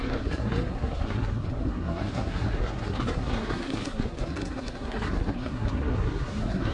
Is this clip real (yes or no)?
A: no